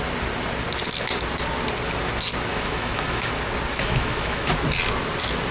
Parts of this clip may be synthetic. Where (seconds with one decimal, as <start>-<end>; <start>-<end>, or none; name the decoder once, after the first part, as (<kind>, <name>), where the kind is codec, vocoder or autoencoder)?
2.5-3.3 (autoencoder, DAC-VAE); 3.7-4.5